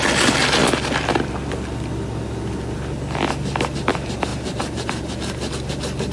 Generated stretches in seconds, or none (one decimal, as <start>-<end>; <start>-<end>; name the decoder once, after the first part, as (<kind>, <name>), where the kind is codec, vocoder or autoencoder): 4.3-5.5 (vocoder, BigVGAN v2)